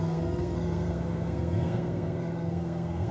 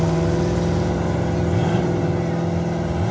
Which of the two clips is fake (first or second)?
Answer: first